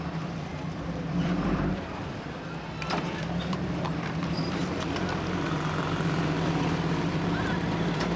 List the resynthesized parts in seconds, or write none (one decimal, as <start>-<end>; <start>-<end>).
0.0-8.2